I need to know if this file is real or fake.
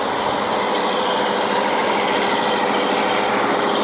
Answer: real